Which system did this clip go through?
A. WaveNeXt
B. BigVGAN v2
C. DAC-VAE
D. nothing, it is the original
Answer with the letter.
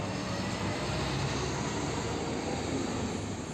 D